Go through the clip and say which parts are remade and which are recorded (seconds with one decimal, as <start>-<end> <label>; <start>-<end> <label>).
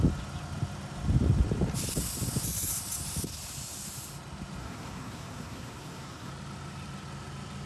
0.0-4.6 recorded; 4.6-6.3 remade; 6.3-7.7 recorded